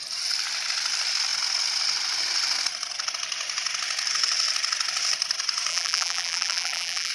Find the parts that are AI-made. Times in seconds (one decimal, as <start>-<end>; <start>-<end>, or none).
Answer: 5.7-7.1